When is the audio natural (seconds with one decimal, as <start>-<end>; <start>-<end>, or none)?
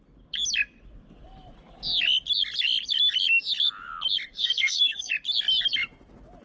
0.0-4.3; 5.1-6.4